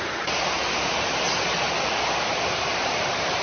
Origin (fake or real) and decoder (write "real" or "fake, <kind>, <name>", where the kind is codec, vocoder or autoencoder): fake, vocoder, BigVGAN v2